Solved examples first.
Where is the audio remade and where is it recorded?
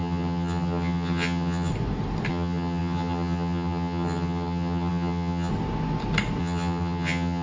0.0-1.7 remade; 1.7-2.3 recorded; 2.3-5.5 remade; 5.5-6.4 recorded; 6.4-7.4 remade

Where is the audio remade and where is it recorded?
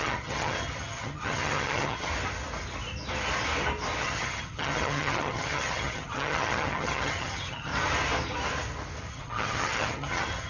0.0-2.1 remade; 2.1-4.0 recorded; 4.0-7.7 remade; 7.7-9.1 recorded; 9.1-10.5 remade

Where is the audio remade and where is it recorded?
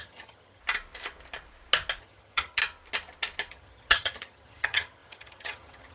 0.0-0.6 remade; 0.6-2.0 recorded; 2.0-2.6 remade; 2.6-3.5 recorded; 3.5-5.9 remade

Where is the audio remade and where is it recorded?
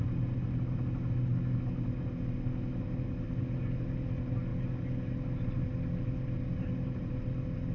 0.0-7.7 recorded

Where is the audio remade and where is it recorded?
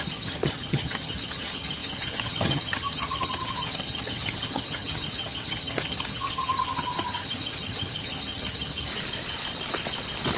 0.0-8.9 remade; 8.9-10.4 recorded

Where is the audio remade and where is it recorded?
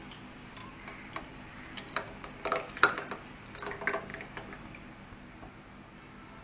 0.0-6.4 recorded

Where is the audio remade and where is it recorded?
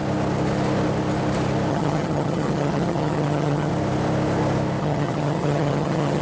0.0-1.7 recorded; 1.7-3.7 remade; 3.7-4.8 recorded; 4.8-6.2 remade